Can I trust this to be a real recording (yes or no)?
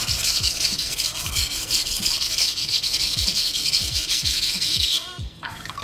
no